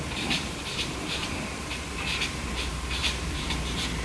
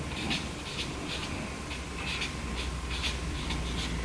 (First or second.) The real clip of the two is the second